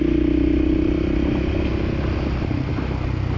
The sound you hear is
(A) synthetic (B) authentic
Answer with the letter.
B